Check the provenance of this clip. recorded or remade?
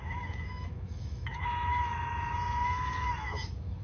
remade